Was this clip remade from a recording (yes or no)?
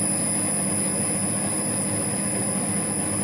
no